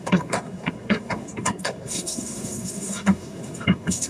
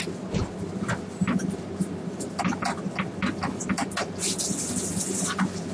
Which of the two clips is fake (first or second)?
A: first